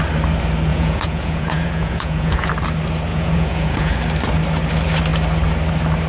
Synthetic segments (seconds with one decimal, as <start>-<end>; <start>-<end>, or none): 0.7-2.5; 3.1-3.9